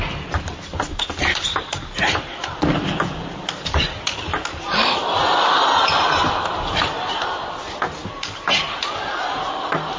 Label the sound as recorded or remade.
recorded